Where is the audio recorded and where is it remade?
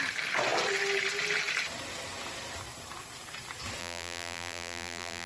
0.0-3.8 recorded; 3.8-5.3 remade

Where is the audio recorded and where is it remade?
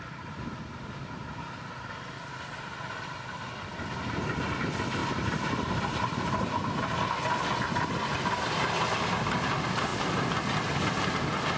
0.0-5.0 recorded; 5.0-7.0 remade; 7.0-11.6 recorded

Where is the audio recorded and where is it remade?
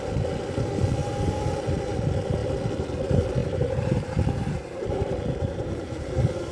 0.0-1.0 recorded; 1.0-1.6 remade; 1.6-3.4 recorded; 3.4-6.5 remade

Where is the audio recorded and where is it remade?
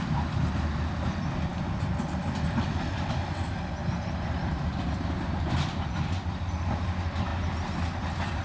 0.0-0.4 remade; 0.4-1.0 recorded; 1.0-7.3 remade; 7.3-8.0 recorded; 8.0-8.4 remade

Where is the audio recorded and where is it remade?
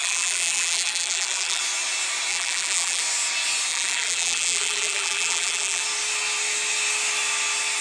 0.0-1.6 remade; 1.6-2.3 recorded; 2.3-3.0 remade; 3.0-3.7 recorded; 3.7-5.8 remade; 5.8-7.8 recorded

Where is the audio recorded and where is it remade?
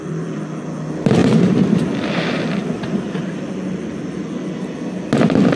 0.0-1.2 recorded; 1.2-1.8 remade; 1.8-5.6 recorded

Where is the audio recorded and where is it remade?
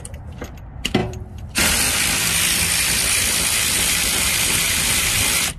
0.0-1.0 recorded; 1.0-4.4 remade; 4.4-5.6 recorded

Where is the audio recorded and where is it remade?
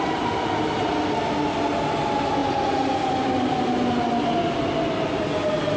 0.0-5.8 recorded